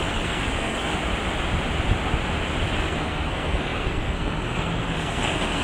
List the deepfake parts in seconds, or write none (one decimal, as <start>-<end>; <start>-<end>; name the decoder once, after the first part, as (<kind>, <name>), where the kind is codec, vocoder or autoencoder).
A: 0.0-0.9 (codec, SNAC); 2.7-5.6